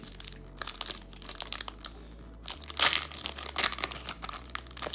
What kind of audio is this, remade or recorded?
recorded